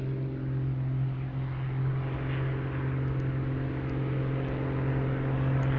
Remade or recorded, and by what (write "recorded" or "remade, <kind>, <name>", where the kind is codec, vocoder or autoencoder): recorded